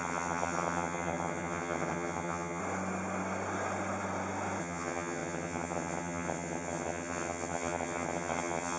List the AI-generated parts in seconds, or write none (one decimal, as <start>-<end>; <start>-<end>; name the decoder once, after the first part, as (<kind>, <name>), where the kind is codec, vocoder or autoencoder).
0.0-2.6 (vocoder, HiFi-GAN); 4.6-8.8